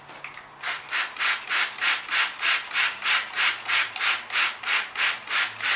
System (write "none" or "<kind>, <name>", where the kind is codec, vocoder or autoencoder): none